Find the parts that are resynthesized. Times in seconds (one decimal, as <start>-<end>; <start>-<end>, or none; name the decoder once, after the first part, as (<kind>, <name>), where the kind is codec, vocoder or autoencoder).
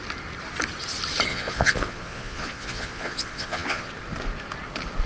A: 1.3-3.9 (vocoder, Vocos)